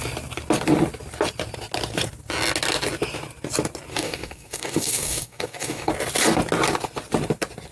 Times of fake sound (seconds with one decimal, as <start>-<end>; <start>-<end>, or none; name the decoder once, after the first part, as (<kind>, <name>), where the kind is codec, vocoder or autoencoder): 3.9-5.9 (codec, DAC)